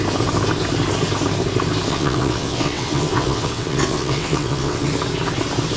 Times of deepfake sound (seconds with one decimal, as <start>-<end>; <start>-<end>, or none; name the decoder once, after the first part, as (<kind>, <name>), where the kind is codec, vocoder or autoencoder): 1.9-4.9 (vocoder, WaveNeXt)